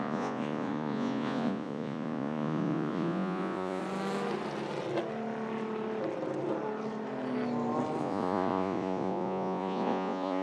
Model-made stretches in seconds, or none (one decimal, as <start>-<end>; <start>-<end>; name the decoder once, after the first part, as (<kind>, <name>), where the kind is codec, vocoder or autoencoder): 0.0-3.8 (vocoder, Vocos); 8.0-10.4